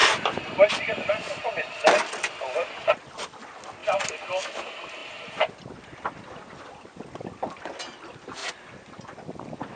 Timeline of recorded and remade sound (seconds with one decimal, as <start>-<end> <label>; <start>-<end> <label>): 0.0-0.7 remade; 0.7-3.8 recorded; 3.8-4.4 remade; 4.4-5.0 recorded; 5.0-7.0 remade; 7.0-8.4 recorded; 8.4-9.8 remade